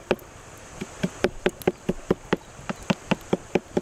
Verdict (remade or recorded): recorded